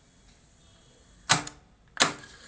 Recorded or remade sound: recorded